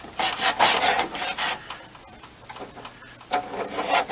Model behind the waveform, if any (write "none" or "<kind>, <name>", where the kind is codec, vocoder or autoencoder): none